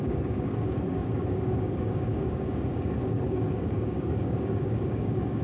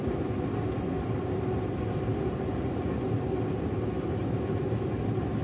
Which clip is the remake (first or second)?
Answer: first